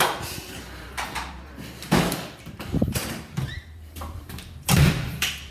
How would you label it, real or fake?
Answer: fake